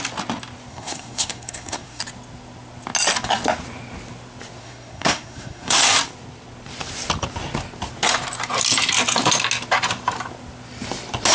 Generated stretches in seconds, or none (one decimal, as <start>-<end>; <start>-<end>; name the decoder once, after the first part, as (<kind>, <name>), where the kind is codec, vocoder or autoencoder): 0.7-2.0 (codec, SNAC); 4.6-5.8